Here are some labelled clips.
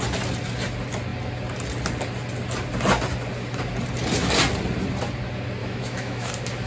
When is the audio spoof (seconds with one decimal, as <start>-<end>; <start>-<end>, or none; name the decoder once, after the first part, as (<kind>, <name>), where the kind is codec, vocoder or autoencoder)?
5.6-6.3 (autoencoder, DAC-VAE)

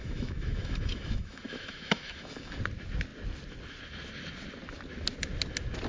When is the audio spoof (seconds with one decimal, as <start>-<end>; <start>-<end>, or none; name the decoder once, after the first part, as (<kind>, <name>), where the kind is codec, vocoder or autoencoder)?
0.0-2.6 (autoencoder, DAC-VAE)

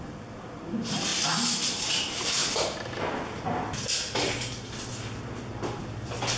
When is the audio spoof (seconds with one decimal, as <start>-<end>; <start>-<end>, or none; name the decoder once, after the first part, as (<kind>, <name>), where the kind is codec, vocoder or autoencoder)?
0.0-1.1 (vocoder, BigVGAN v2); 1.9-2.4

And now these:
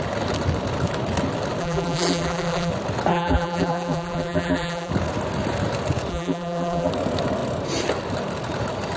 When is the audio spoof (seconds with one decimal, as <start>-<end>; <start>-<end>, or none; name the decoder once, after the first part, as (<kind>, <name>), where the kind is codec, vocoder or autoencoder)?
1.6-2.7 (vocoder, BigVGAN v2); 3.1-4.9; 6.1-6.9

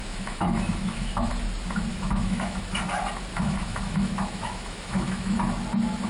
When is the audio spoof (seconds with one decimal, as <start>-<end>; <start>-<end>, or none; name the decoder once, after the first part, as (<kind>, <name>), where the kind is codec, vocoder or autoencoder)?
0.0-1.3 (autoencoder, DAC-VAE); 1.9-2.8; 3.3-5.4

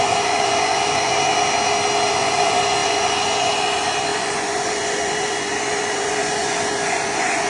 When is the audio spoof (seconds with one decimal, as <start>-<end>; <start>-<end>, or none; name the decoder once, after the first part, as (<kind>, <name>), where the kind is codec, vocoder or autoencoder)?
0.0-1.1 (vocoder, Vocos); 2.1-7.5